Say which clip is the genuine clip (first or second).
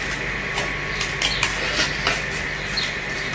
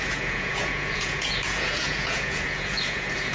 first